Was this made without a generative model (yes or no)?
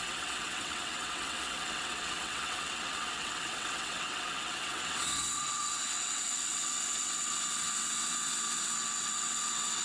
no